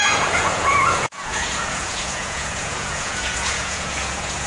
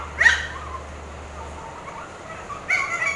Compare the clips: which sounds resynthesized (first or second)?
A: first